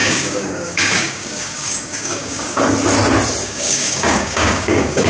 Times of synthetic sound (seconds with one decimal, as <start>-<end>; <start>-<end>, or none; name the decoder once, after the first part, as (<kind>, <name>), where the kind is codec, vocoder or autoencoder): 0.0-2.6 (codec, DAC); 3.4-5.1